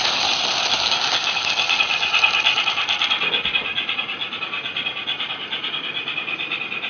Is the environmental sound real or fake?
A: real